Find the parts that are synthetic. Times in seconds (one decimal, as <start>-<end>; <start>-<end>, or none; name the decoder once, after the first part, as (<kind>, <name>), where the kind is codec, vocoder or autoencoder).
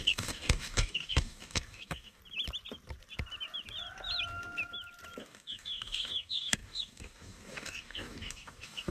0.0-2.2 (codec, DAC); 5.2-8.9